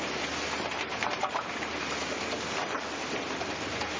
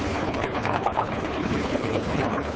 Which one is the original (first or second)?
first